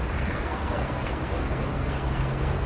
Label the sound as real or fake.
fake